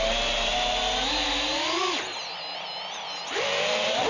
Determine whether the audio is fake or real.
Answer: real